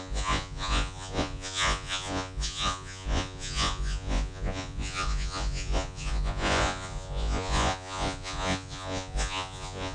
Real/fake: fake